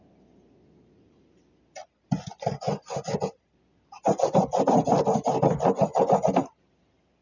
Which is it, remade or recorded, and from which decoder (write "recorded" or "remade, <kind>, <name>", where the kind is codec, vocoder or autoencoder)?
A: recorded